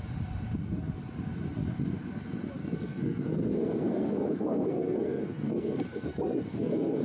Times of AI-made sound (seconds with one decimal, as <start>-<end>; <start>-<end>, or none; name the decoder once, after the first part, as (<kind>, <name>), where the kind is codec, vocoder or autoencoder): 2.6-7.0 (codec, SNAC)